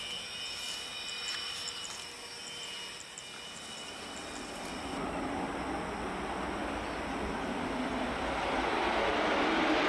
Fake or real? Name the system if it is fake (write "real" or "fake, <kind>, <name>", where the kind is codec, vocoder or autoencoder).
real